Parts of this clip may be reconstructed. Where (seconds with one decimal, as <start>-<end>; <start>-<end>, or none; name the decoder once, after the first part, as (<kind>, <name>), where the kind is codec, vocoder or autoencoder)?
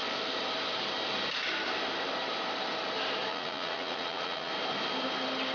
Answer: 3.3-4.5 (vocoder, Vocos)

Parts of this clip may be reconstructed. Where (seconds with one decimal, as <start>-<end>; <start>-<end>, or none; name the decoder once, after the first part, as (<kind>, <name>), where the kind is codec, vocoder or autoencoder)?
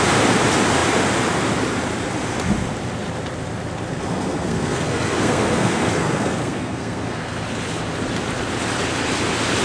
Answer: 3.9-7.4 (codec, SNAC)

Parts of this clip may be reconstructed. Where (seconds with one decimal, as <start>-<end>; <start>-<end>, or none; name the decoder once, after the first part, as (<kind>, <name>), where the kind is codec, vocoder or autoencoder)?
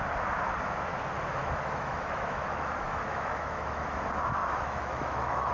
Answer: 1.4-4.0 (autoencoder, DAC-VAE); 4.4-5.5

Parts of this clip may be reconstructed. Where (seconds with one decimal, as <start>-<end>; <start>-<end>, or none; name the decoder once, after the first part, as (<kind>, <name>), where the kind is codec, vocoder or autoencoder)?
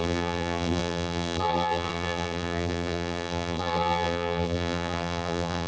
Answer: 0.0-5.7 (vocoder, BigVGAN v2)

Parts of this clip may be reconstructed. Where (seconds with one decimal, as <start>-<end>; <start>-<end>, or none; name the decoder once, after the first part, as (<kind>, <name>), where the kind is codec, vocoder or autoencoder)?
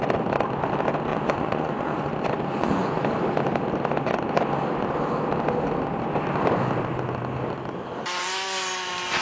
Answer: 1.1-2.1 (vocoder, Vocos); 2.5-3.0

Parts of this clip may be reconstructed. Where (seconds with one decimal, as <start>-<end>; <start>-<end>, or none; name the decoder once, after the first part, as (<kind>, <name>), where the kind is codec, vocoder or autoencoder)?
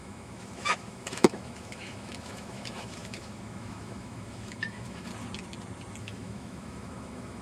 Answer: 0.0-5.1 (autoencoder, DAC-VAE); 6.0-7.4